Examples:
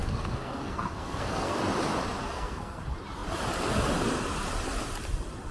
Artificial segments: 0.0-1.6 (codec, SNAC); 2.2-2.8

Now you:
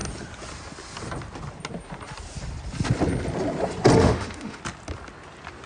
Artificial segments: 4.0-4.6 (autoencoder, DAC-VAE)

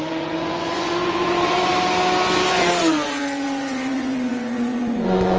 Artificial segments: 0.0-1.7 (vocoder, Vocos); 2.5-5.4

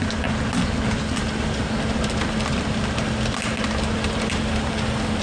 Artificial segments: none